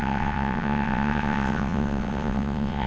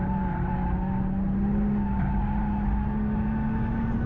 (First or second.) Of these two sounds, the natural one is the second